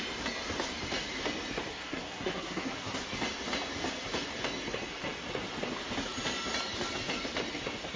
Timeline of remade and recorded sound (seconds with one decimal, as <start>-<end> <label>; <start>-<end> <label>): 0.0-1.7 recorded; 1.7-3.0 remade; 3.0-8.0 recorded